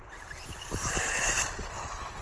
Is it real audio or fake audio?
real